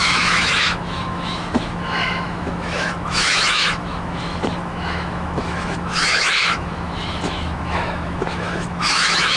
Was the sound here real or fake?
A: fake